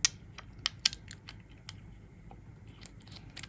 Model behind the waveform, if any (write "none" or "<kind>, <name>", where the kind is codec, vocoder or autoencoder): none